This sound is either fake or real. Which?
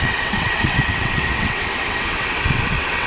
fake